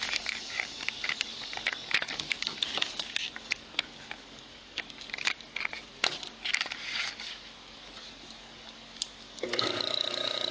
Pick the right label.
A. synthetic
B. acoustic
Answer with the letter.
A